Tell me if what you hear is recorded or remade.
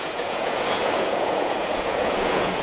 remade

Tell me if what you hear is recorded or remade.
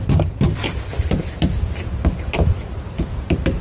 recorded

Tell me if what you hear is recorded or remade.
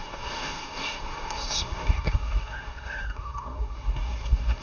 remade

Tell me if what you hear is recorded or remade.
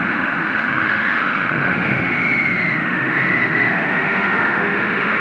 remade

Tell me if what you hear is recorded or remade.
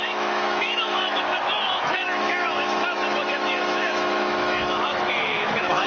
remade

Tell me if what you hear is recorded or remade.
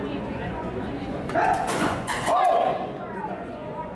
remade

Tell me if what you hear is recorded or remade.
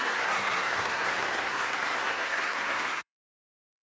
remade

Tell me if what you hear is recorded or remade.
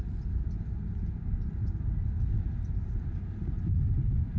recorded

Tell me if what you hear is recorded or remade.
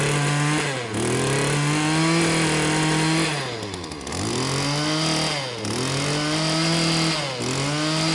recorded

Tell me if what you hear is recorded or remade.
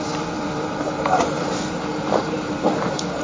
remade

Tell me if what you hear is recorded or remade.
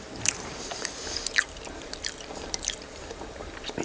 remade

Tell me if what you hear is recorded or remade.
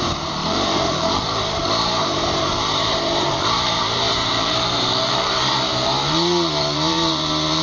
remade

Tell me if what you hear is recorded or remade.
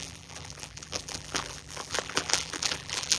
remade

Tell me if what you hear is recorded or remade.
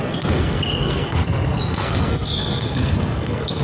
remade